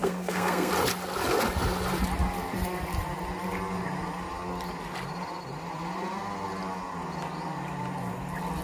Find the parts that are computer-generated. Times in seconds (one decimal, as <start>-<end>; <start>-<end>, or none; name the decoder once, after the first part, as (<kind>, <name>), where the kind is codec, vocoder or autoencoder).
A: 0.0-0.7 (codec, SNAC)